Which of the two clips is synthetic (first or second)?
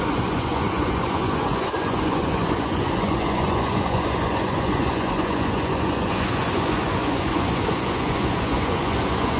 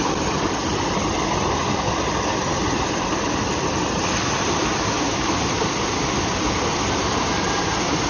first